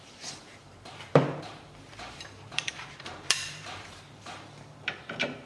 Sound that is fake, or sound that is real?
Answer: fake